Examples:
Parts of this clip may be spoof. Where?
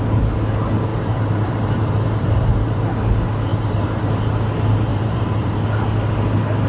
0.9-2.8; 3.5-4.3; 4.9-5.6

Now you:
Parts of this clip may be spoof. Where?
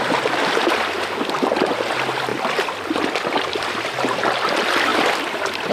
2.3-4.5; 4.9-5.7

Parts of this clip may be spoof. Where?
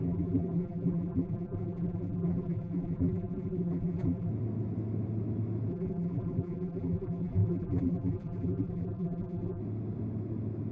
0.0-4.3; 5.7-9.6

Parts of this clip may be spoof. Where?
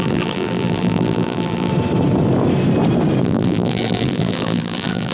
0.0-1.7; 3.2-5.1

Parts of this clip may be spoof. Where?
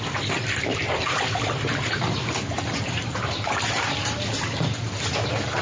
0.7-3.7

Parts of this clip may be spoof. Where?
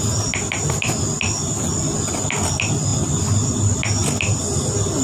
none